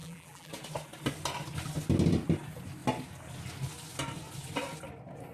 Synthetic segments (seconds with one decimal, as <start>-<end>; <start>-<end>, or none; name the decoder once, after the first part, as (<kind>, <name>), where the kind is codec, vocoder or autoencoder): 0.0-0.5 (vocoder, BigVGAN v2)